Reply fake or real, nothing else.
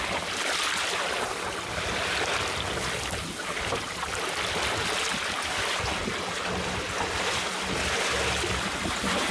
real